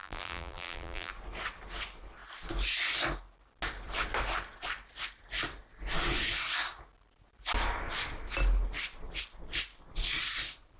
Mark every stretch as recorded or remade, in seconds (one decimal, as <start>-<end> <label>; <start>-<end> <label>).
0.0-1.1 remade; 1.1-10.8 recorded